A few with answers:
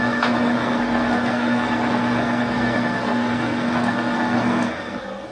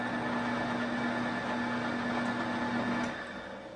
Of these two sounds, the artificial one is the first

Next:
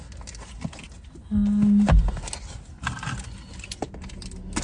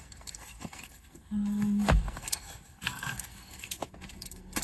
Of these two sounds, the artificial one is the second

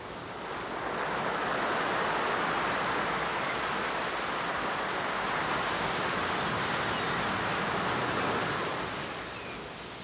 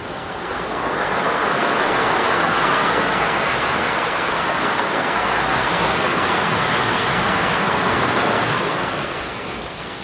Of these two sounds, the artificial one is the second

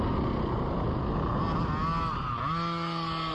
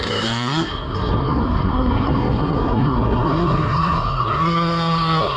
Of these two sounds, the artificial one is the second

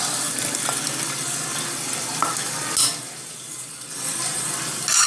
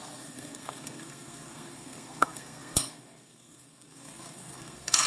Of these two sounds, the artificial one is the second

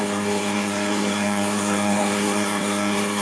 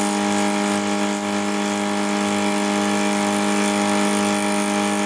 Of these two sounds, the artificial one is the first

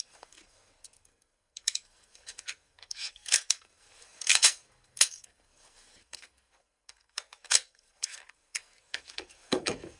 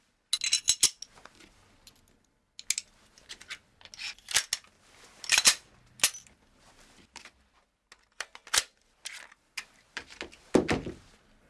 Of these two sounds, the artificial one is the first